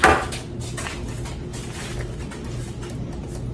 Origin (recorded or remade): recorded